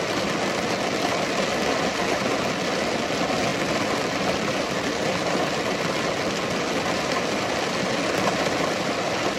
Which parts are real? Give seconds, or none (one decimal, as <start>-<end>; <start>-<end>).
0.0-9.4